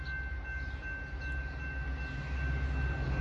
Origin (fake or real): real